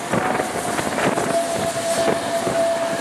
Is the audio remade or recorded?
recorded